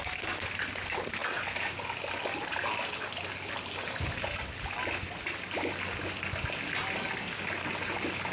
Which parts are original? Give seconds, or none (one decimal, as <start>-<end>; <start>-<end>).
0.0-8.3